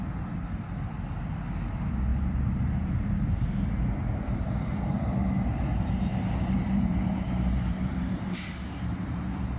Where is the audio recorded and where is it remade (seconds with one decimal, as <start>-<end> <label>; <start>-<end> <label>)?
0.0-2.1 recorded; 2.1-5.0 remade; 5.0-6.1 recorded; 6.1-8.2 remade; 8.2-9.6 recorded